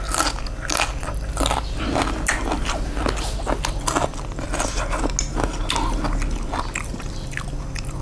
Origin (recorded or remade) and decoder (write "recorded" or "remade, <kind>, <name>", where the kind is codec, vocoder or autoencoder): recorded